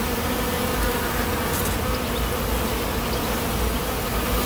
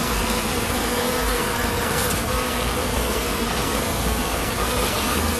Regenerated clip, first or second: second